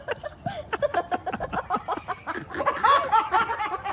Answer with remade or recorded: recorded